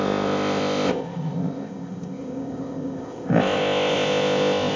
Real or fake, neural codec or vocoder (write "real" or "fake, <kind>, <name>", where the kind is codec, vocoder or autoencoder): fake, codec, ZipCodec